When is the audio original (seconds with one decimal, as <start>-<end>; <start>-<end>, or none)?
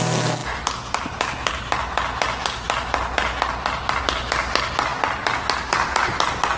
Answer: 0.0-6.6